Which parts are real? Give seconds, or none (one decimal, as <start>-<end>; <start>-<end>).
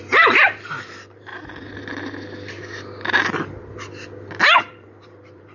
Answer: 1.3-4.6